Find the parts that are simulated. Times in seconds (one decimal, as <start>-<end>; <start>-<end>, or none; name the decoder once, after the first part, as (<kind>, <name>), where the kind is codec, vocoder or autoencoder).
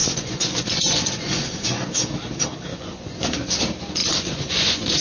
0.0-1.8 (vocoder, Vocos); 2.7-3.3; 4.0-5.0